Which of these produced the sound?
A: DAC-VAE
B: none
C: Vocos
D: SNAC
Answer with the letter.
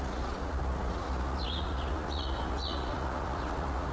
C